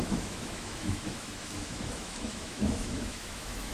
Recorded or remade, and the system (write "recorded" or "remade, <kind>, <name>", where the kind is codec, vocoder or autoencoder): remade, autoencoder, DAC-VAE